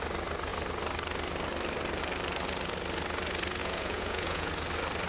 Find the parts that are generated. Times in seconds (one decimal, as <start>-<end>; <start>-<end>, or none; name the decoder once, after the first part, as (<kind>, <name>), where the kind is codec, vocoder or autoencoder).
3.6-4.5 (vocoder, Vocos)